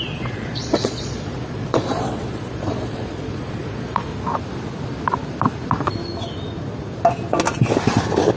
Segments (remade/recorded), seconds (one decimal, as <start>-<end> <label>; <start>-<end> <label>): 0.0-4.1 remade; 4.1-8.4 recorded